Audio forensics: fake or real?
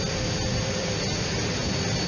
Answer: real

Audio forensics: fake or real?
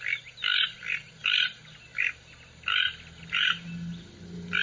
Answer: real